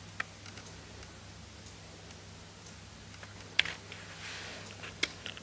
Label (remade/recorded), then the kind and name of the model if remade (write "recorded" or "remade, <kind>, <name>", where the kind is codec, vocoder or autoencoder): recorded